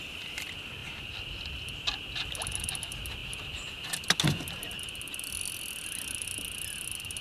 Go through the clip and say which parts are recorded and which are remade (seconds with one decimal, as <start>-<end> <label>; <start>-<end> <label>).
0.0-7.2 recorded